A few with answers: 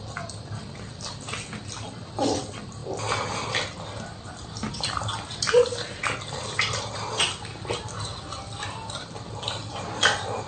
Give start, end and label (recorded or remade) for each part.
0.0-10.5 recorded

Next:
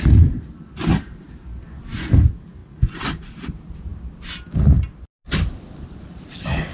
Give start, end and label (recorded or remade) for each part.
0.0-6.7 recorded

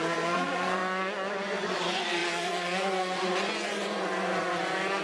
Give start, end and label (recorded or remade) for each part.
0.0-0.8 remade; 0.8-1.7 recorded; 1.7-5.0 remade

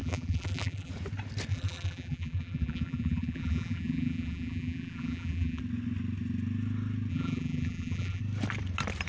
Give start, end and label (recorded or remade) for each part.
0.0-0.9 remade; 0.9-1.5 recorded; 1.5-5.6 remade; 5.6-7.1 recorded; 7.1-8.2 remade; 8.2-9.1 recorded

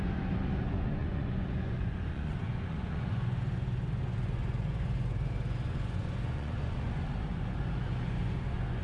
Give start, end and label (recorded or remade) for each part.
0.0-8.8 remade

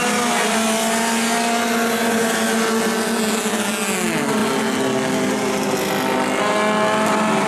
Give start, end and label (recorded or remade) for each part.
0.0-7.5 recorded

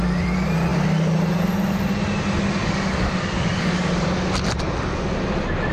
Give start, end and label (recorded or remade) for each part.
0.0-2.6 recorded; 2.6-3.9 remade; 3.9-5.7 recorded

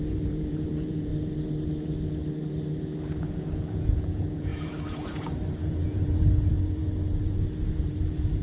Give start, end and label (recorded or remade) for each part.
0.0-1.1 remade; 1.1-3.2 recorded; 3.2-8.4 remade